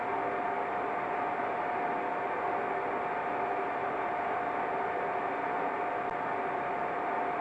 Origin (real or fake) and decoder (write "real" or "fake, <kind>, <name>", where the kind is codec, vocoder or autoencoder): real